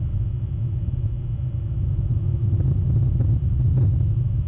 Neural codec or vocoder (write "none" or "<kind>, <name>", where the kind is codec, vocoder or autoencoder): none